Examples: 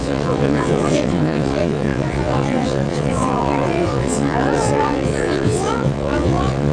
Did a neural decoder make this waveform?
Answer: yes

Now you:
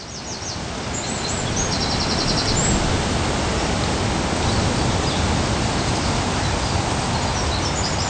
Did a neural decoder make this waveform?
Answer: no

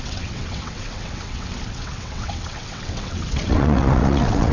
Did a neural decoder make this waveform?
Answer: yes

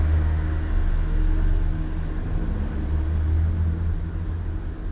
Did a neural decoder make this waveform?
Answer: no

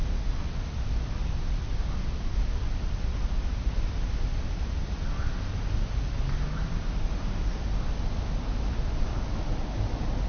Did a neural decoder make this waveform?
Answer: no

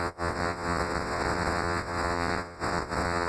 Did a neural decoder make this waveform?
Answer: yes